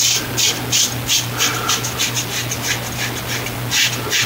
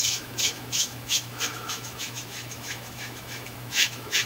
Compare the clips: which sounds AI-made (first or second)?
second